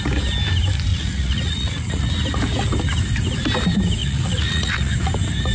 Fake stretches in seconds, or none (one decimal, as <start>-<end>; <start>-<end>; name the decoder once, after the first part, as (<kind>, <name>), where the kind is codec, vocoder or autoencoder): 0.9-2.1 (vocoder, Vocos); 4.0-4.9